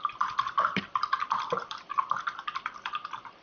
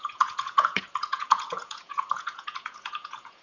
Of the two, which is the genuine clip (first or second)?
first